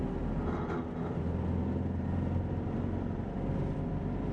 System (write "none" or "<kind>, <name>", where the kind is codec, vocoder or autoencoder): none